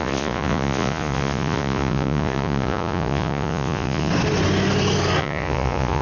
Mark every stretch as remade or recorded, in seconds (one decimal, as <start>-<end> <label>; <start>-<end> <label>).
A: 0.0-4.1 remade; 4.1-5.2 recorded; 5.2-6.0 remade